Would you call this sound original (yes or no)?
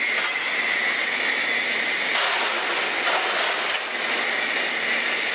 yes